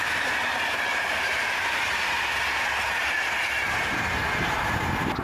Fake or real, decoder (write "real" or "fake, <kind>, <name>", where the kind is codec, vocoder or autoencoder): real